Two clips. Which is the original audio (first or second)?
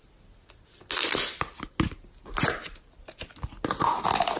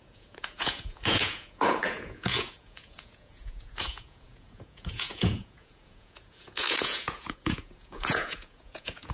first